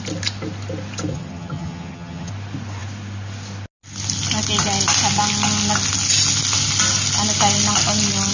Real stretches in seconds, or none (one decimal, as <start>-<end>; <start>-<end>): 0.0-1.1; 2.3-8.3